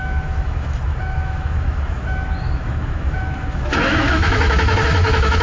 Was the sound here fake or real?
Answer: fake